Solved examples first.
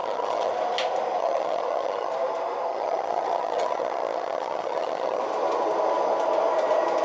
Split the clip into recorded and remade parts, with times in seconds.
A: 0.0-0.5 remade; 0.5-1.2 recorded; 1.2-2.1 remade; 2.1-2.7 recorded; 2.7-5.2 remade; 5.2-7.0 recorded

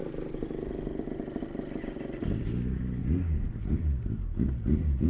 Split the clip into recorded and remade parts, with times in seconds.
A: 0.0-5.1 recorded

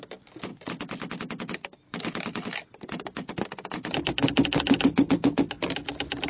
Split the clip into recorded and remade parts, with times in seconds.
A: 0.0-6.3 recorded

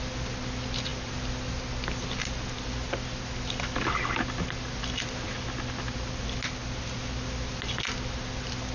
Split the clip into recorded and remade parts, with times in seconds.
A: 0.0-8.7 recorded